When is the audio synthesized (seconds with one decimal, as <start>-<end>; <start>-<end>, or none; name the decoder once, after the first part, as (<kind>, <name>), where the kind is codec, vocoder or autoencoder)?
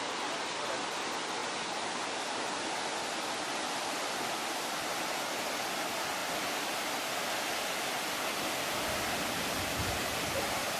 none